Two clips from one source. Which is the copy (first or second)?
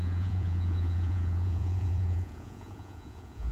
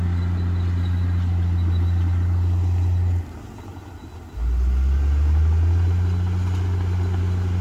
first